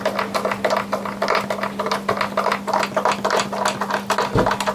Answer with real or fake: real